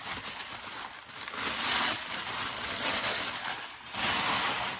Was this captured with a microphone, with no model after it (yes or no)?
yes